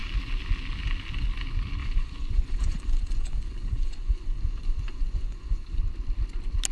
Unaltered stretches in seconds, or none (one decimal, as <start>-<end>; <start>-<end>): 0.0-1.8; 5.8-6.7